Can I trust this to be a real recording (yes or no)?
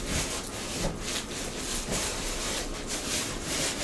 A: yes